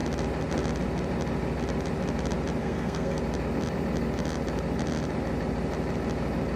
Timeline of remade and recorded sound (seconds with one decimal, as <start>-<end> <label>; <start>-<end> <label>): 0.0-2.6 recorded; 2.6-3.2 remade; 3.2-6.6 recorded

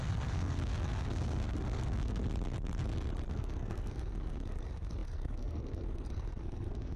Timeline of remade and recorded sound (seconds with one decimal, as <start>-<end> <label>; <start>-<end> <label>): 0.0-2.2 remade; 2.2-3.3 recorded; 3.3-7.0 remade

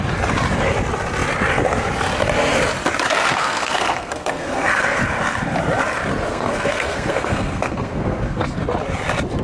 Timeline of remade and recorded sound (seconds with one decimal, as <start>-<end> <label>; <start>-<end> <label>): 0.0-3.1 recorded; 3.1-5.0 remade; 5.0-6.3 recorded; 6.3-8.6 remade; 8.6-9.4 recorded

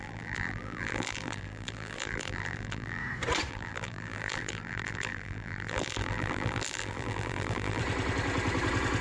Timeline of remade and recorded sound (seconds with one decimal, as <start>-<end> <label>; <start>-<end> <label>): 0.0-3.0 remade; 3.0-3.5 recorded; 3.5-7.8 remade; 7.8-9.0 recorded